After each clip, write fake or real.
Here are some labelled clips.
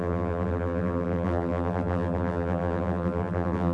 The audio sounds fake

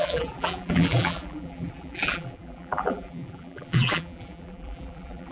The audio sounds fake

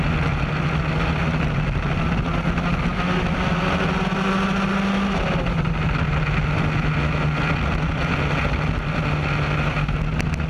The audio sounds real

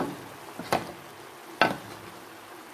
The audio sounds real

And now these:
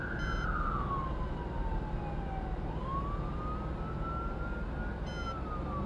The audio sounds real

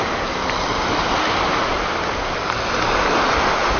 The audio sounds real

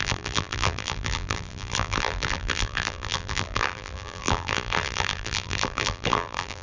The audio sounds fake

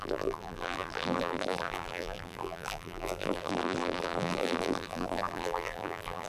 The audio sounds fake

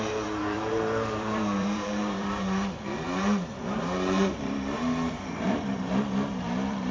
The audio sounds fake